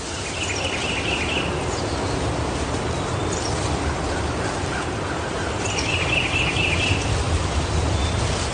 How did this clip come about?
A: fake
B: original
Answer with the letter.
B